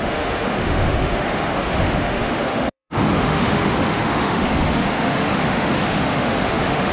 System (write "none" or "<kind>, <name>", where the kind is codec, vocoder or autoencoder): autoencoder, DAC-VAE